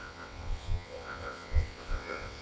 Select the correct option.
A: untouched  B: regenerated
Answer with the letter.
B